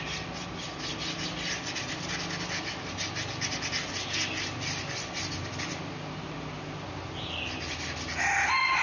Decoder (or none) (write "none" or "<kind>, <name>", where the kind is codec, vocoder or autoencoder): none